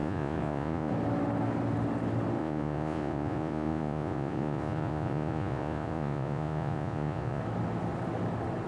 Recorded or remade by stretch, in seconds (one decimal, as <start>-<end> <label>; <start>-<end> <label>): 0.0-0.9 remade; 0.9-2.4 recorded; 2.4-7.4 remade; 7.4-8.7 recorded